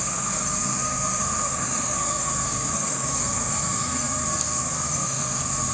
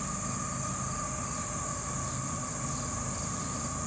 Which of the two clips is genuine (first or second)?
second